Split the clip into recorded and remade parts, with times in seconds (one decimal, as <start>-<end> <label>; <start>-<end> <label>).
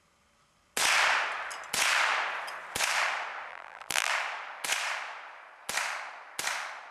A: 0.0-3.5 recorded; 3.5-4.1 remade; 4.1-6.9 recorded